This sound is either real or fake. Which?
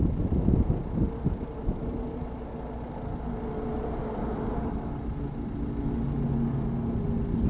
real